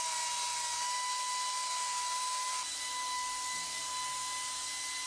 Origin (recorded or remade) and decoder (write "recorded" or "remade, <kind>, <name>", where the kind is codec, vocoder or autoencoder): recorded